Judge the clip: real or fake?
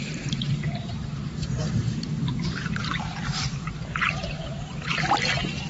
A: fake